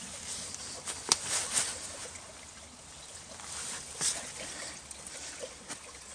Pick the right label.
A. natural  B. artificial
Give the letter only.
A